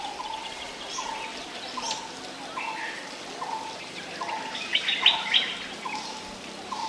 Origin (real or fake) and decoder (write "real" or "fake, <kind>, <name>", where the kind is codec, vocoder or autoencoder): real